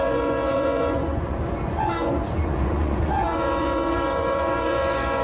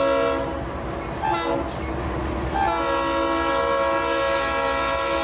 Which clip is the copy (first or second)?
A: first